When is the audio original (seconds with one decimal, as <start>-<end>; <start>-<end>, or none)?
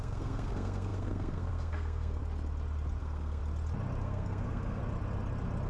2.2-3.0; 3.4-4.0; 4.8-5.7